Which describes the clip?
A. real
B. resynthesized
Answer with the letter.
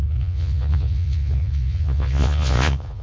B